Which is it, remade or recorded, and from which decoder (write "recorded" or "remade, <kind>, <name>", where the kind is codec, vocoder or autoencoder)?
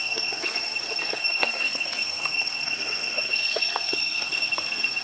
remade, codec, SNAC